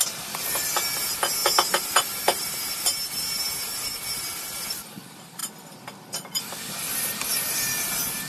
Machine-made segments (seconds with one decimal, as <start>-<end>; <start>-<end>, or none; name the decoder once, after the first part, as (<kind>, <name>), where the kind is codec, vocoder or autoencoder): none